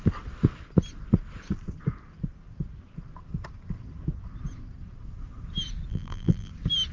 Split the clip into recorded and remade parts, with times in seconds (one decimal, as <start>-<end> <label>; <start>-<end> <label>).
0.0-5.9 recorded; 5.9-6.5 remade; 6.5-6.9 recorded